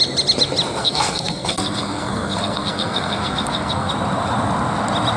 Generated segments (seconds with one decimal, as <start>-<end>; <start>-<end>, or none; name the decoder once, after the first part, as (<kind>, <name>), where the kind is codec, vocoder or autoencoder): 0.8-3.9 (codec, SNAC)